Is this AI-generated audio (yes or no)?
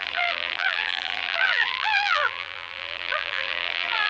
yes